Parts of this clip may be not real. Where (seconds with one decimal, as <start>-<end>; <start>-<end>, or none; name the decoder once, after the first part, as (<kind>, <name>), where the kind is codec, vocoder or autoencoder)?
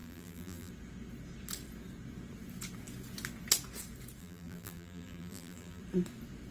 0.0-0.7 (vocoder, BigVGAN v2); 4.2-5.8